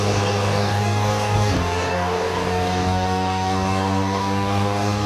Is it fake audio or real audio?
fake